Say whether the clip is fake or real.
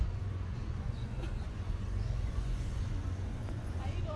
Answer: fake